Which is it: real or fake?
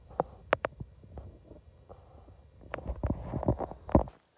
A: real